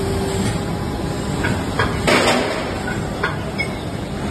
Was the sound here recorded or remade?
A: recorded